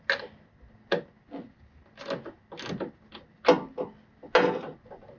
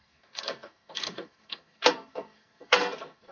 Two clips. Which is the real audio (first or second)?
first